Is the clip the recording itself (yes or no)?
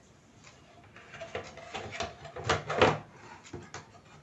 yes